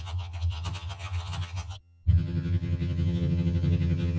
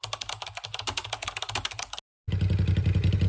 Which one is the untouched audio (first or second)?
second